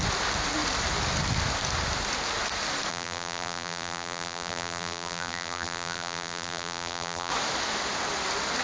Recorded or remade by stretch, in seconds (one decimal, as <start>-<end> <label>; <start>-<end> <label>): 0.0-2.9 recorded; 2.9-7.3 remade; 7.3-8.6 recorded